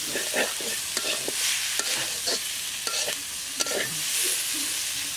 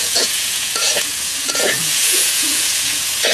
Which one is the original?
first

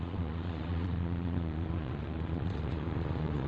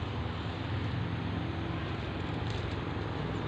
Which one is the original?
second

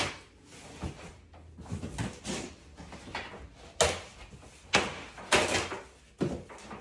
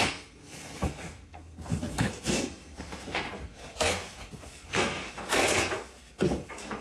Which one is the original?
first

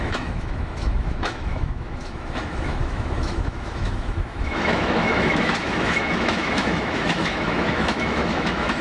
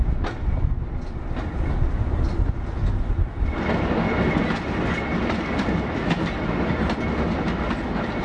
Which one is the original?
second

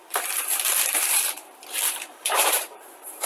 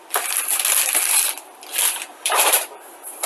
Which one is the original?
second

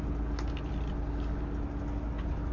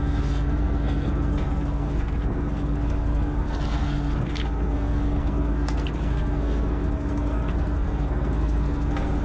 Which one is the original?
first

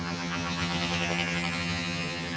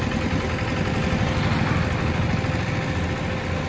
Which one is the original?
second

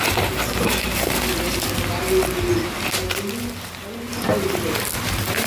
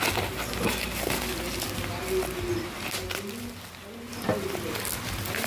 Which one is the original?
second